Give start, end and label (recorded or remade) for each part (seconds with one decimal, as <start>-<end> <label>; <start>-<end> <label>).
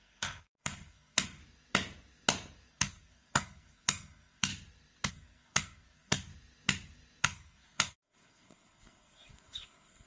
0.0-1.4 remade; 1.4-2.7 recorded; 2.7-4.5 remade; 4.5-5.1 recorded; 5.1-6.3 remade; 6.3-7.2 recorded; 7.2-10.1 remade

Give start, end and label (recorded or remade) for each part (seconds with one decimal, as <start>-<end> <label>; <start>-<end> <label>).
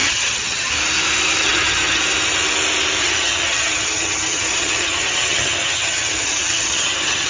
0.0-0.7 remade; 0.7-1.4 recorded; 1.4-2.0 remade; 2.0-3.0 recorded; 3.0-7.3 remade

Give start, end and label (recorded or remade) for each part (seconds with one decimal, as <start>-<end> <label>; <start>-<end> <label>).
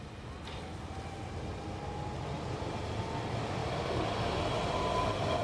0.0-5.4 recorded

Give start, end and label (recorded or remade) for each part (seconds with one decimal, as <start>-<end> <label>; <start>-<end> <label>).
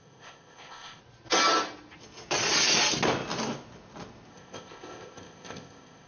0.0-1.0 remade; 1.0-4.3 recorded; 4.3-6.1 remade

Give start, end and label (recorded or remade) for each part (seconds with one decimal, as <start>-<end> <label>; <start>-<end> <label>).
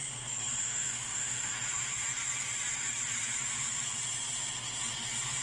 0.0-0.6 recorded; 0.6-1.5 remade; 1.5-5.4 recorded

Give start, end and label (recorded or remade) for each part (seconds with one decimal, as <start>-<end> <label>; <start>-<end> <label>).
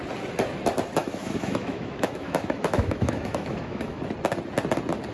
0.0-1.0 recorded; 1.0-4.0 remade; 4.0-5.1 recorded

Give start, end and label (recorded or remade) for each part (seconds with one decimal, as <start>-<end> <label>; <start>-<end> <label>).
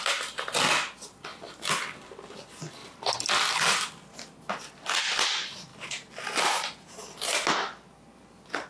0.0-8.7 recorded